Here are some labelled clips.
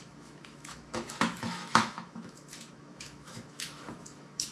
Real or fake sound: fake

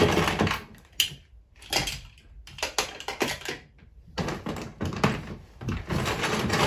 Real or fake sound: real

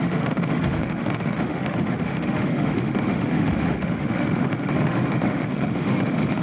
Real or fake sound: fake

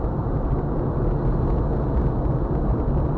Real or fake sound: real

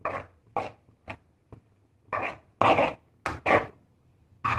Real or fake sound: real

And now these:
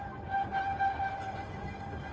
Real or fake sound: real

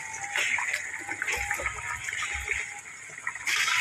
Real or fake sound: real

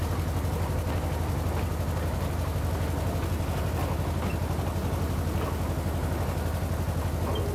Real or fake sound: real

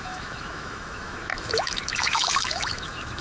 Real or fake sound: fake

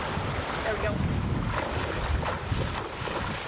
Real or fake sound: real